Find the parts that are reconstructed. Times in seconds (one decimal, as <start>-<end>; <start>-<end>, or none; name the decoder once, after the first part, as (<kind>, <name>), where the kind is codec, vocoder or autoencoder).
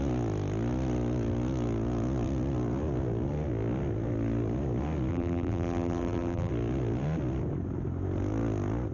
5.1-6.5 (vocoder, BigVGAN v2)